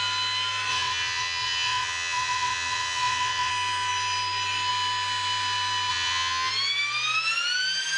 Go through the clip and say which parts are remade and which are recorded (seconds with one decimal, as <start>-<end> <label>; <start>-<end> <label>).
0.0-0.7 recorded; 0.7-3.5 remade; 3.5-5.9 recorded; 5.9-6.5 remade; 6.5-8.0 recorded

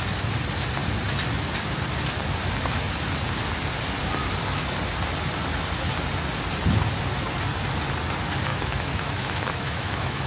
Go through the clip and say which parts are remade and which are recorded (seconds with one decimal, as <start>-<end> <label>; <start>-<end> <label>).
0.0-8.5 recorded; 8.5-10.3 remade

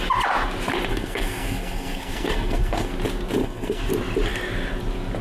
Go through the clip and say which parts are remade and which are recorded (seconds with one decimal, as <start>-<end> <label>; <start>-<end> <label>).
0.0-0.9 recorded; 0.9-2.9 remade; 2.9-3.4 recorded; 3.4-3.9 remade; 3.9-5.2 recorded